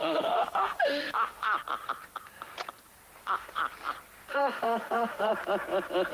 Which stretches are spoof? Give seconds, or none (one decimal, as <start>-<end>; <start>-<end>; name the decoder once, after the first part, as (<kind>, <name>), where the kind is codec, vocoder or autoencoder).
0.0-1.5 (autoencoder, DAC-VAE); 3.2-3.6; 4.3-5.3